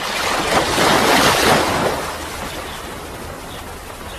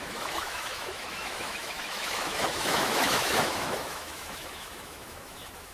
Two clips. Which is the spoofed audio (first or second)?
second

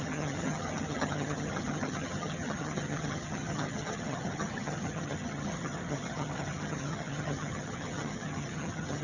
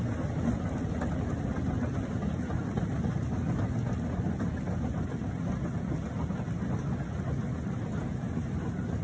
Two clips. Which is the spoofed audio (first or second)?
first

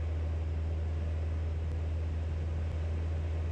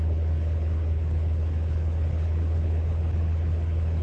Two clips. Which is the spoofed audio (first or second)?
second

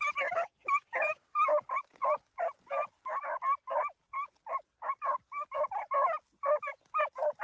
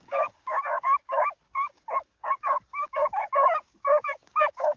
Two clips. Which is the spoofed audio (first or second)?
second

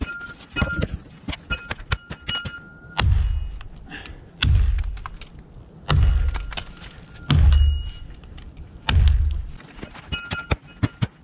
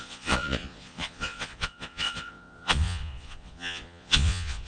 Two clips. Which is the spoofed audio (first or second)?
second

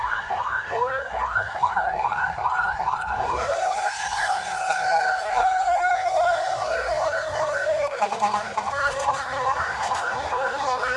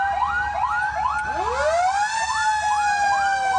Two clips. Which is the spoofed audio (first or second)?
first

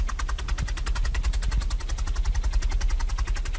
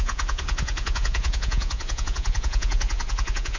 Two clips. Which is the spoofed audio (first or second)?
second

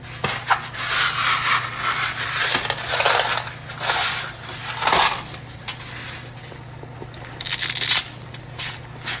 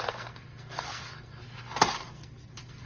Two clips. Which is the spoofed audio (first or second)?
second